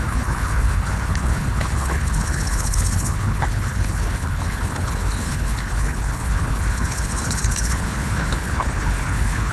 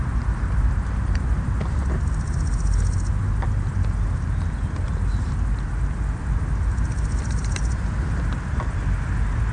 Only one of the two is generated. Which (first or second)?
first